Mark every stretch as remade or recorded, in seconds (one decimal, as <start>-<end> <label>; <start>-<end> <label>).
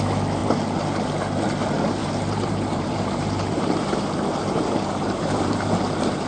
0.0-2.0 recorded; 2.0-5.8 remade; 5.8-6.3 recorded